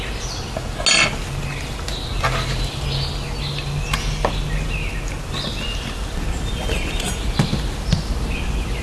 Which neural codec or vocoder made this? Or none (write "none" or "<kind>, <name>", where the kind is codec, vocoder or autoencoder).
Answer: none